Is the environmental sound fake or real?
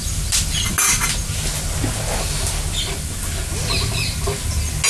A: real